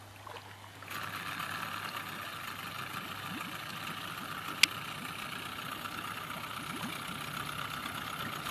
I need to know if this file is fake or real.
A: real